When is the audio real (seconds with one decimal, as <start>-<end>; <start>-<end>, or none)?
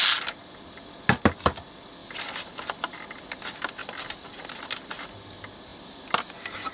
0.0-2.0; 3.0-3.8; 4.6-5.7; 6.3-6.7